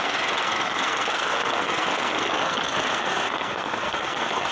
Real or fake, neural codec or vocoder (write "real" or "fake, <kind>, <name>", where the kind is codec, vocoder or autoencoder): fake, codec, SNAC